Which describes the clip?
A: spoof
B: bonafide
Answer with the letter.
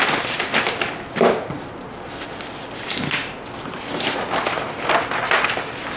B